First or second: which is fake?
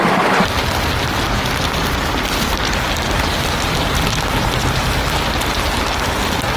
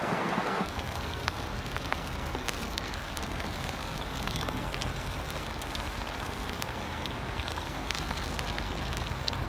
second